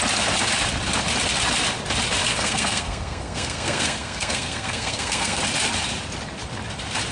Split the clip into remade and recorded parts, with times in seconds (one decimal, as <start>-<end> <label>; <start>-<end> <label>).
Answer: 0.0-2.3 recorded; 2.3-5.4 remade; 5.4-7.1 recorded